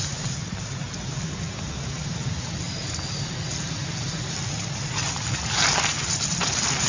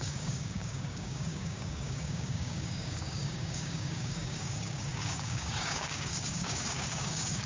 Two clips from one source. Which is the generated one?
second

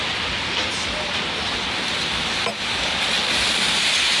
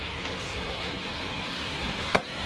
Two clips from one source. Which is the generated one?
second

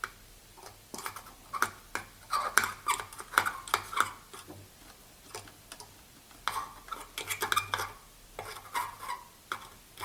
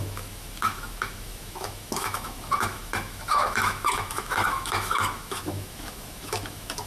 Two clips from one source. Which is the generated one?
second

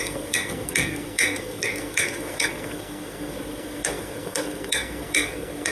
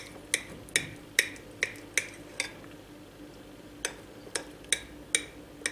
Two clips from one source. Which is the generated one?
first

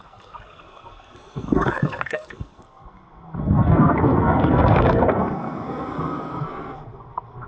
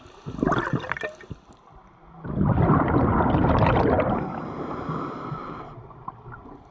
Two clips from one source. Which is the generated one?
first